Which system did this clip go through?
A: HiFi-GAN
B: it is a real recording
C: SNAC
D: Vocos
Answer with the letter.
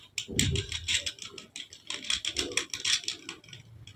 B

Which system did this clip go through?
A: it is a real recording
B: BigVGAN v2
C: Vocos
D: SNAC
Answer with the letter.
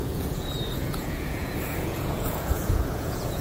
C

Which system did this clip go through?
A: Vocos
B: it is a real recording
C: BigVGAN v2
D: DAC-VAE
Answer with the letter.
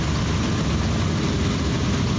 B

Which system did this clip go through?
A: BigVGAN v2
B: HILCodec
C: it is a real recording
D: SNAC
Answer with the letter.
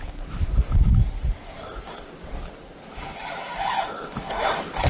C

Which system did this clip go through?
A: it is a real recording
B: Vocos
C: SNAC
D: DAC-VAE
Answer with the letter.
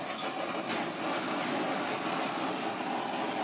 A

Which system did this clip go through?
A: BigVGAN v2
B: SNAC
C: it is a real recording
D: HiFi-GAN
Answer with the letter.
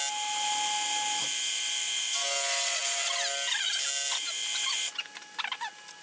C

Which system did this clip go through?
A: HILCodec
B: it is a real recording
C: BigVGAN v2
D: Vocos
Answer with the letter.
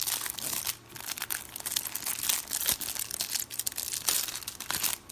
B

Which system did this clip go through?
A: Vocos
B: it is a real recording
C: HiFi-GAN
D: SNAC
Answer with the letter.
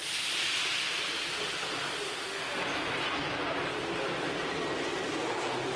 B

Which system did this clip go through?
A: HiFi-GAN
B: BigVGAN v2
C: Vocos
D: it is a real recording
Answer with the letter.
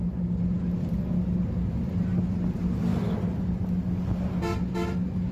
D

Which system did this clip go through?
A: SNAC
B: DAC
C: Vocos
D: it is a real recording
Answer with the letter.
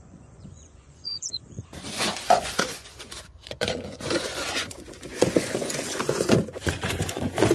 C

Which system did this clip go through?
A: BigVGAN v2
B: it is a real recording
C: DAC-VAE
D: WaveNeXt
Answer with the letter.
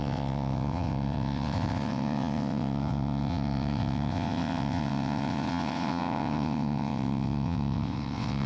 D